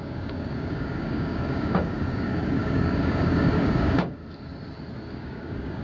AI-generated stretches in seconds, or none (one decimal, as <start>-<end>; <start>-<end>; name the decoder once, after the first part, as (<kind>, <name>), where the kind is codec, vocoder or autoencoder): 0.0-4.2 (codec, DAC); 5.1-5.8

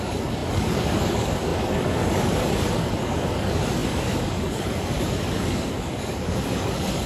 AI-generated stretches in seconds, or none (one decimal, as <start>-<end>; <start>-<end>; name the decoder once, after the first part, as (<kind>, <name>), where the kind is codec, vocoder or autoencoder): 0.0-7.1 (codec, DAC)

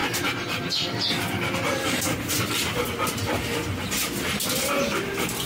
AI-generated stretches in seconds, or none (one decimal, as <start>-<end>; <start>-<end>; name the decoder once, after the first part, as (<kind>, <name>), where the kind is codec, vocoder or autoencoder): none